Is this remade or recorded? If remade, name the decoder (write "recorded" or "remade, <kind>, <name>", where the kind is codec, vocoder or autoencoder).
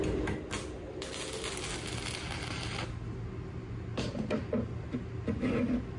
recorded